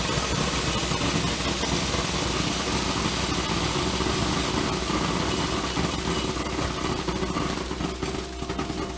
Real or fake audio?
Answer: real